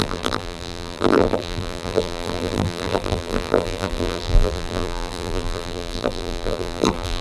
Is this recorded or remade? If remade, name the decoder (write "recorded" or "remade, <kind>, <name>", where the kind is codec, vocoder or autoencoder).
remade, vocoder, BigVGAN v2